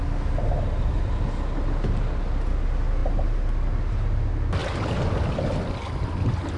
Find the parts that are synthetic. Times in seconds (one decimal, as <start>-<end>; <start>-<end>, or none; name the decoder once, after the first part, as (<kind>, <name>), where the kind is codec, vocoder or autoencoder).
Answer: none